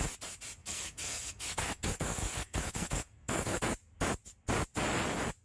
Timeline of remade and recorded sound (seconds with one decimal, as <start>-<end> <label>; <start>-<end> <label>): 0.0-0.6 recorded; 0.6-3.6 remade; 3.6-5.4 recorded